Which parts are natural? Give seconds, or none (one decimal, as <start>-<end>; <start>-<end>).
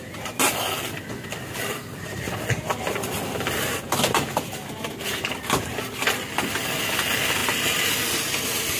0.0-8.8